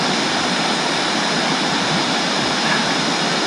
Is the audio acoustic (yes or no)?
yes